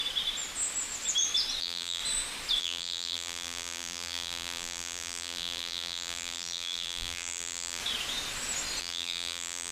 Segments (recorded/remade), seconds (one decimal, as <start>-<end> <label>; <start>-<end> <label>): 0.0-1.6 recorded; 1.6-2.0 remade; 2.0-2.6 recorded; 2.6-7.8 remade; 7.8-8.8 recorded; 8.8-9.7 remade